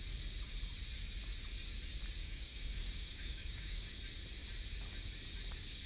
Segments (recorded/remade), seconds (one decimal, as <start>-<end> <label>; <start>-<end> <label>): 0.0-2.2 recorded; 2.2-3.9 remade; 3.9-5.9 recorded